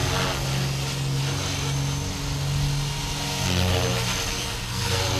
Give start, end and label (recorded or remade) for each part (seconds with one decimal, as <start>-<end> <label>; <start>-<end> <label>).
0.0-4.3 recorded; 4.3-5.2 remade